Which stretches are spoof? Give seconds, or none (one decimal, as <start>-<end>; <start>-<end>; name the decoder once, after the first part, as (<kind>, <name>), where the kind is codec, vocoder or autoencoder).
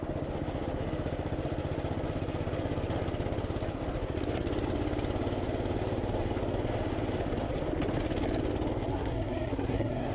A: 8.9-10.1 (codec, SNAC)